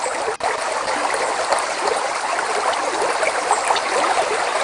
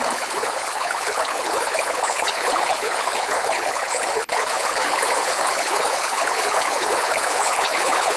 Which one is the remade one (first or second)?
second